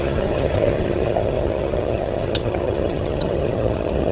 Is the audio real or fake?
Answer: fake